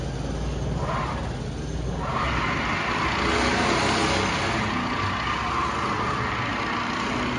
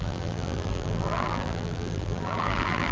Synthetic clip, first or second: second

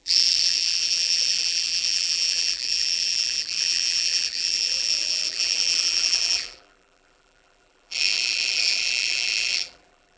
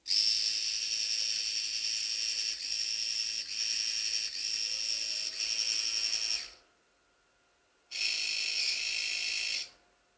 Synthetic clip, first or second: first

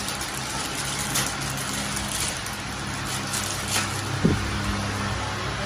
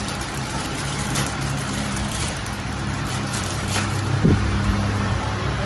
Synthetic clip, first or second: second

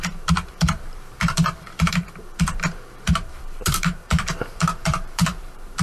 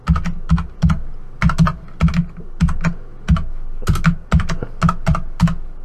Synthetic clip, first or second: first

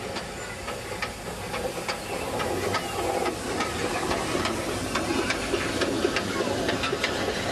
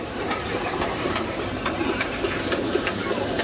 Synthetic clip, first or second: second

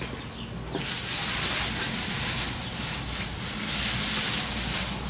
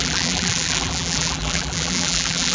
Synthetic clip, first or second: second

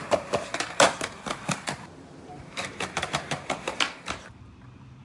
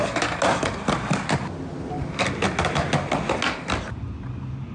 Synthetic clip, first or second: first